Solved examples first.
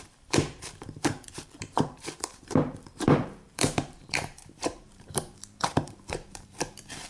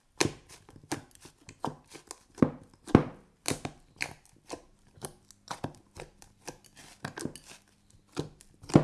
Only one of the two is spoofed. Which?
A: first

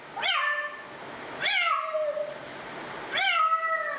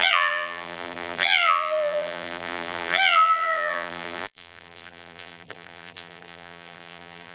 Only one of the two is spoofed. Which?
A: second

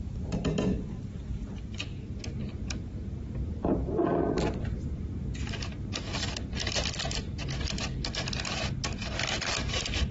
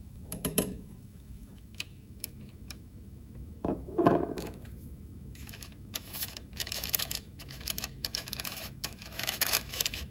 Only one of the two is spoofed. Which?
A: second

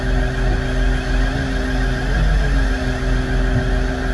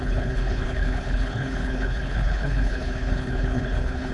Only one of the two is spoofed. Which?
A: second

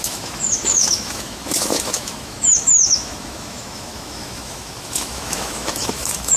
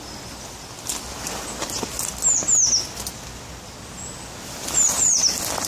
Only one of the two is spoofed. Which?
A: first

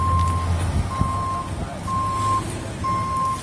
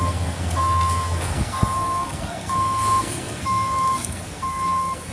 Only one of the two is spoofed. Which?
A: second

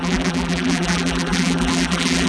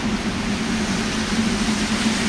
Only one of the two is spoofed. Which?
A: first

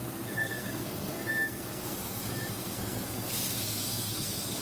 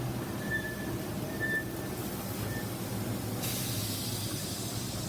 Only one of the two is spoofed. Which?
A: first